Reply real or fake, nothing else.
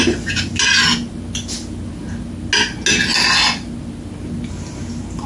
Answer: real